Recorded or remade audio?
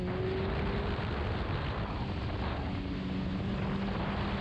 recorded